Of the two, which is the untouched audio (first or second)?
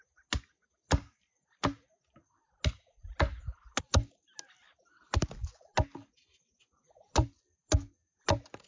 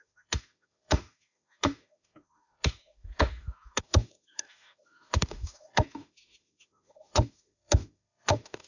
first